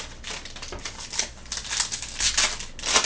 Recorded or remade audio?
recorded